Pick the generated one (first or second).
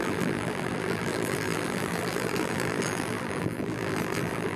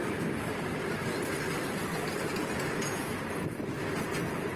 first